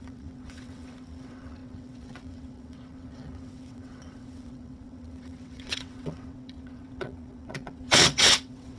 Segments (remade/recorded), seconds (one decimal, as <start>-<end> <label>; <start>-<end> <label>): 0.0-8.8 remade